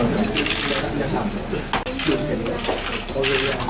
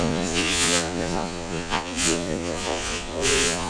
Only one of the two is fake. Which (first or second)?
second